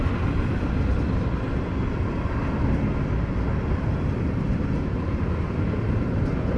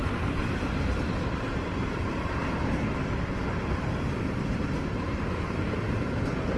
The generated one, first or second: second